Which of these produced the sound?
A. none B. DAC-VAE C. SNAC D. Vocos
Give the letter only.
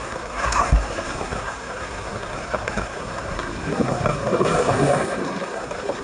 C